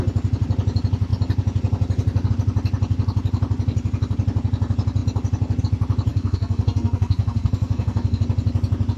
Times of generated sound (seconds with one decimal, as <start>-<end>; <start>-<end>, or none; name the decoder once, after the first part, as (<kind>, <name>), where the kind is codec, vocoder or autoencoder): 6.1-8.2 (codec, SNAC)